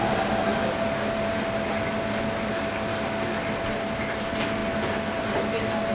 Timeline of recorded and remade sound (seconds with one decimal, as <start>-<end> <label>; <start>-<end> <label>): 0.0-5.9 recorded